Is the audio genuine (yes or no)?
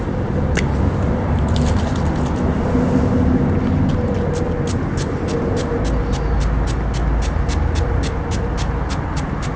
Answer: yes